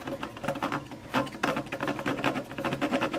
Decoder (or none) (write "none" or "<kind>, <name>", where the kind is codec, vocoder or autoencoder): vocoder, BigVGAN v2